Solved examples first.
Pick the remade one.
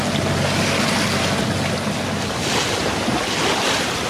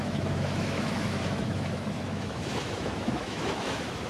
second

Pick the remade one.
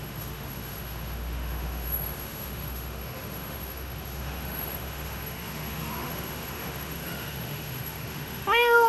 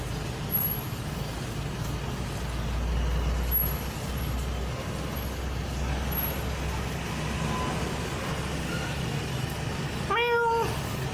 first